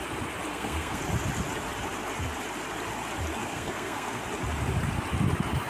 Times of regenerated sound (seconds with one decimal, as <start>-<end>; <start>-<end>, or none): 0.5-1.0; 3.4-4.2